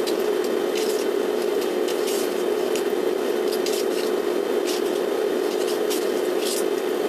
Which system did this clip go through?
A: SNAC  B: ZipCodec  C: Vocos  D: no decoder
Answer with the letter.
D